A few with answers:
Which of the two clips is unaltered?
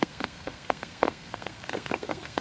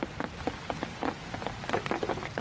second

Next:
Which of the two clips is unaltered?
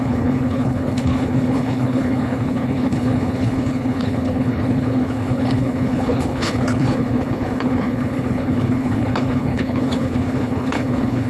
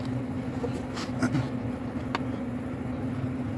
second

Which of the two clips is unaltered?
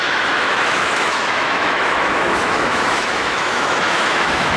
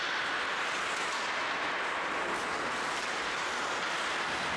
second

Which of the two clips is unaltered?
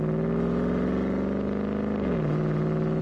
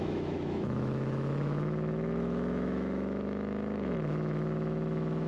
first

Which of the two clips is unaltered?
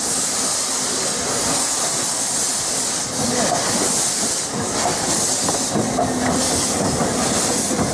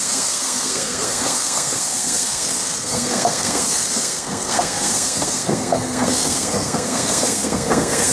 first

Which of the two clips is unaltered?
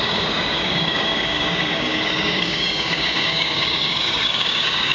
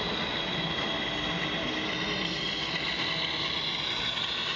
second